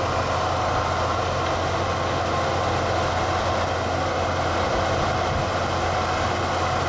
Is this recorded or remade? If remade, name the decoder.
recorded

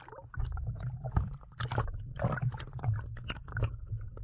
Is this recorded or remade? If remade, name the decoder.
recorded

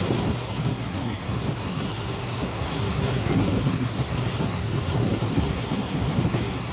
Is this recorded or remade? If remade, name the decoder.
remade, codec, SNAC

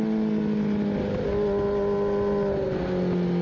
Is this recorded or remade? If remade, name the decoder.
recorded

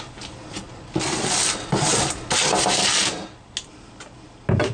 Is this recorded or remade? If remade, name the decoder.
recorded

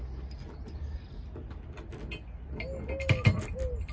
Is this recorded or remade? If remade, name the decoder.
recorded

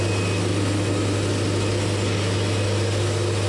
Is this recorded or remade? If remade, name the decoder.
recorded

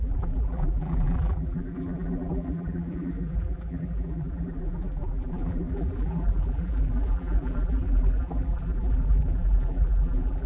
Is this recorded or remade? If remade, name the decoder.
remade, vocoder, BigVGAN v2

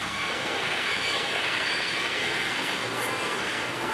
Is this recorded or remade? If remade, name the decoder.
remade, codec, SNAC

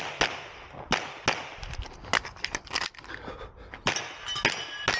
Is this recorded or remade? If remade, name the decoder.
recorded